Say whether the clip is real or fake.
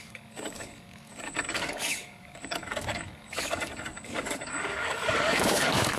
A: fake